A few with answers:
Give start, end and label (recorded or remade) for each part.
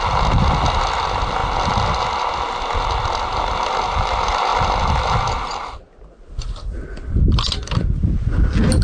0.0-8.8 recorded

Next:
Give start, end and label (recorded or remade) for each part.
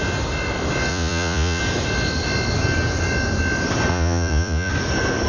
0.0-0.9 recorded; 0.9-1.6 remade; 1.6-3.9 recorded; 3.9-4.7 remade; 4.7-5.3 recorded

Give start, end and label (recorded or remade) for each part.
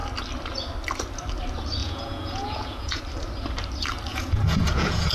0.0-1.8 recorded; 1.8-3.0 remade; 3.0-4.1 recorded; 4.1-5.1 remade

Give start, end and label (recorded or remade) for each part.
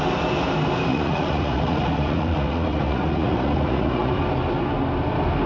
0.0-0.9 recorded; 0.9-4.2 remade; 4.2-5.5 recorded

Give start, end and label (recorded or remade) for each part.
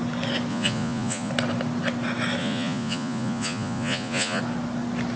0.0-0.5 recorded; 0.5-1.3 remade; 1.3-2.4 recorded; 2.4-4.4 remade; 4.4-5.2 recorded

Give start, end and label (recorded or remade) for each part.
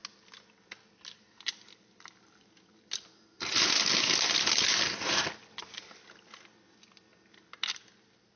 0.0-8.4 recorded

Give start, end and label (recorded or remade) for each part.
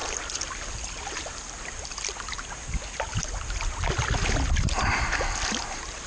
0.0-6.1 recorded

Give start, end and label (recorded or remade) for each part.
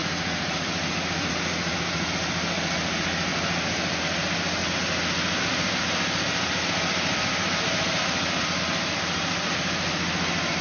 0.0-2.1 remade; 2.1-10.6 recorded